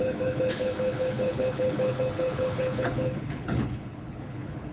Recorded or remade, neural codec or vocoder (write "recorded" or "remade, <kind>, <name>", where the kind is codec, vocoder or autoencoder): remade, codec, HILCodec